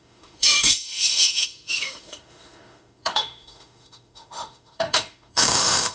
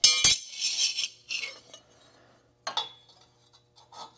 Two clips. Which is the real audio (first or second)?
second